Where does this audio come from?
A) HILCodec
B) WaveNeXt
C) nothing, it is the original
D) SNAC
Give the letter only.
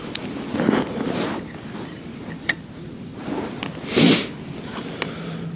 C